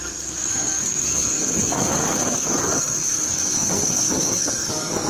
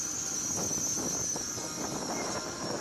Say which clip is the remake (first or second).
first